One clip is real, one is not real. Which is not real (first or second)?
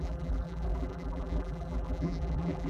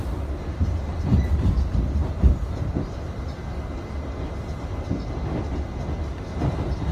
first